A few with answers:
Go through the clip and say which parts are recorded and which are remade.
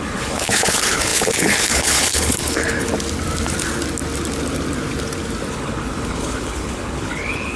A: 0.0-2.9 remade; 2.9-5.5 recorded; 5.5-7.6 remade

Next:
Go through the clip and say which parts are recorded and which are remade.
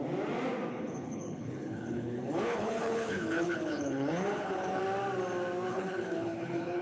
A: 0.0-0.7 recorded; 0.7-4.8 remade; 4.8-5.7 recorded; 5.7-6.8 remade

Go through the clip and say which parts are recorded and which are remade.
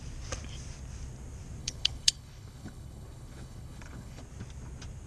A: 0.0-1.6 recorded; 1.6-4.2 remade; 4.2-5.1 recorded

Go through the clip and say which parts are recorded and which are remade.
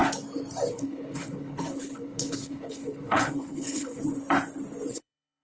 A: 0.0-0.7 recorded; 0.7-4.0 remade; 4.0-4.9 recorded; 4.9-5.4 remade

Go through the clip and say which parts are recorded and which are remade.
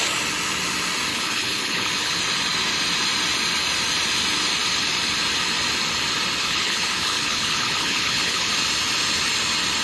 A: 0.0-1.1 recorded; 1.1-2.2 remade; 2.2-6.4 recorded; 6.4-8.5 remade; 8.5-9.8 recorded